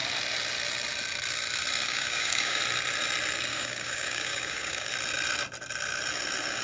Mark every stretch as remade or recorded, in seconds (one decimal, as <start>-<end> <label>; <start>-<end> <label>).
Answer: 0.0-1.8 recorded; 1.8-2.6 remade; 2.6-3.5 recorded; 3.5-4.9 remade; 4.9-6.6 recorded